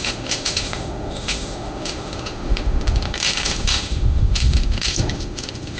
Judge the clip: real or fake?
fake